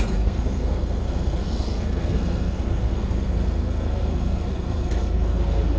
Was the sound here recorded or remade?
remade